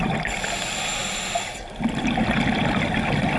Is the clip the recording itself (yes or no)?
yes